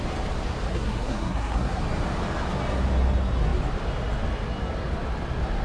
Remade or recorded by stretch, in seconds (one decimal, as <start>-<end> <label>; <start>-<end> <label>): 0.0-0.7 recorded; 0.7-1.8 remade; 1.8-5.6 recorded